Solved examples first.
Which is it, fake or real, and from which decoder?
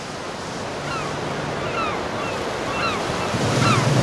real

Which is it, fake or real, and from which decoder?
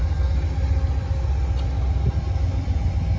real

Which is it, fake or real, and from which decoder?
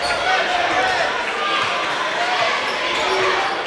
real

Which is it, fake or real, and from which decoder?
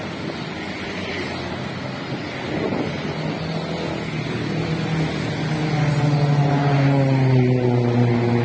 real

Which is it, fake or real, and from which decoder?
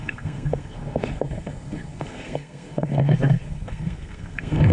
fake, codec, SNAC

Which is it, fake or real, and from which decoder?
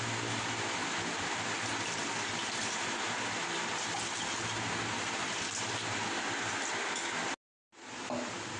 real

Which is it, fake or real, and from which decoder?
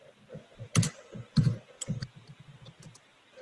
real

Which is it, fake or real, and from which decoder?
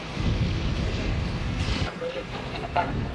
fake, codec, SNAC